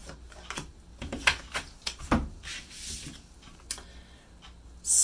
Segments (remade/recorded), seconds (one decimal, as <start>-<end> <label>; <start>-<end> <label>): 0.0-5.0 recorded